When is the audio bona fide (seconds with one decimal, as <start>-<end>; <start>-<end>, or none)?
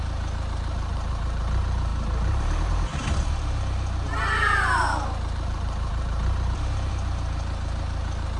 none